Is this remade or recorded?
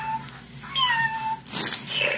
recorded